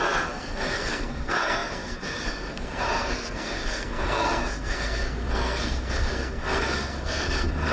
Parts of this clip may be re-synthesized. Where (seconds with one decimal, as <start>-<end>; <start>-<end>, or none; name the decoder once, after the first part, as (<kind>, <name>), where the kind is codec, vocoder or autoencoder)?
0.0-7.7 (codec, SNAC)